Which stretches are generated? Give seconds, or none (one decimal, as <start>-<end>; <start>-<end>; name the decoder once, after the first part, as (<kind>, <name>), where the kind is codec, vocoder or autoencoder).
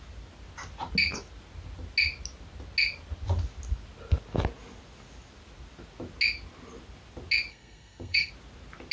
7.5-8.3 (codec, SNAC)